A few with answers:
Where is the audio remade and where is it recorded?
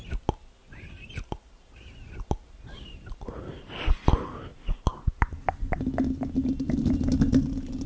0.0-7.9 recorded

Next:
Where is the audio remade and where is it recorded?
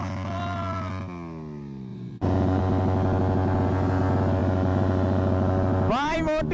0.0-1.9 recorded; 1.9-2.6 remade; 2.6-4.4 recorded; 4.4-5.7 remade; 5.7-6.5 recorded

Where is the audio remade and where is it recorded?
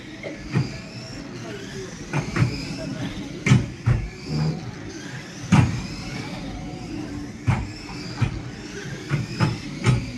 0.0-10.2 recorded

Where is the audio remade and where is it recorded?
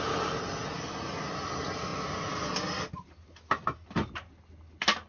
0.0-5.1 recorded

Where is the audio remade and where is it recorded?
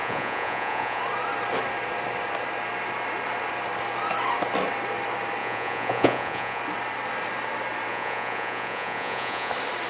0.0-1.0 remade; 1.0-5.4 recorded; 5.4-6.6 remade; 6.6-7.9 recorded; 7.9-9.5 remade; 9.5-9.9 recorded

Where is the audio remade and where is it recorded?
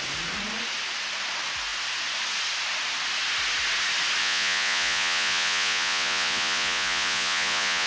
0.0-4.2 recorded; 4.2-7.9 remade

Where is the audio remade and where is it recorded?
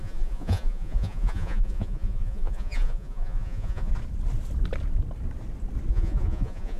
0.0-3.9 remade; 3.9-5.9 recorded; 5.9-6.8 remade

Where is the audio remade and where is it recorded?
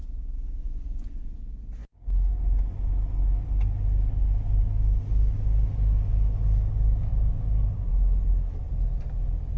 0.0-0.6 recorded; 0.6-1.4 remade; 1.4-9.6 recorded